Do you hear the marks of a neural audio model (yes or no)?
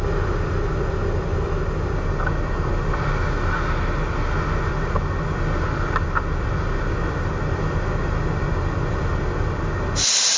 no